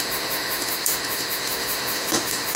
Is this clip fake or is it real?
fake